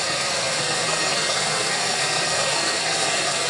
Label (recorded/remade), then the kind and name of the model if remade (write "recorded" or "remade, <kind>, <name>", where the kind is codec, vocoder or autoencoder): remade, codec, SNAC